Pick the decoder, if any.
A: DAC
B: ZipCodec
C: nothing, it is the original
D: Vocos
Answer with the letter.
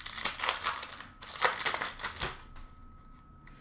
C